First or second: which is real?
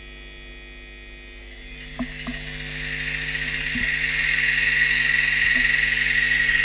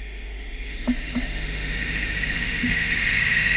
first